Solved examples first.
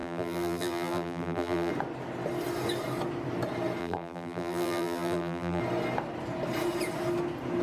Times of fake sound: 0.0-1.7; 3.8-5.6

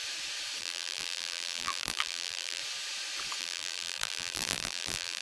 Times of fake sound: 0.6-2.6; 3.4-5.2

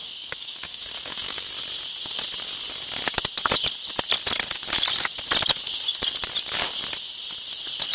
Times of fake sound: 0.0-1.5

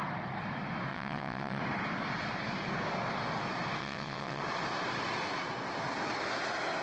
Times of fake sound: 0.9-1.6; 3.8-4.4

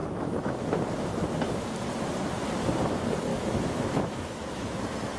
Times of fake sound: 0.0-0.8; 3.3-4.8

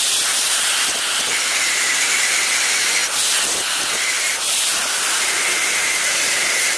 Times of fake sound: none

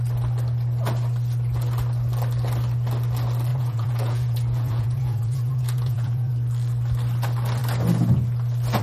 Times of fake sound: 3.5-6.3

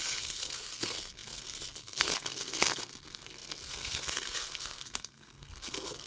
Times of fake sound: 0.0-6.1